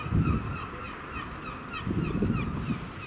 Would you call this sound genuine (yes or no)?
yes